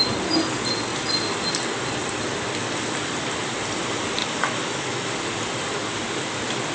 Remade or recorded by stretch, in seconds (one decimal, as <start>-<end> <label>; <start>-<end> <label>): 0.0-4.2 recorded; 4.2-5.1 remade; 5.1-6.7 recorded